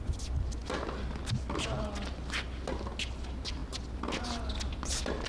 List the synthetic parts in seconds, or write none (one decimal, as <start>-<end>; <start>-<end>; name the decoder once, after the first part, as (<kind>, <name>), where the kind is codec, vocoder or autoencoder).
none

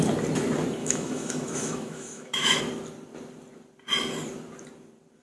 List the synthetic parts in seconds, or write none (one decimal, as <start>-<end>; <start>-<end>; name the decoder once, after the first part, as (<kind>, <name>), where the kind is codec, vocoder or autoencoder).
0.8-2.6 (autoencoder, DAC-VAE)